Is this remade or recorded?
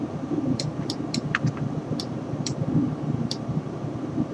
remade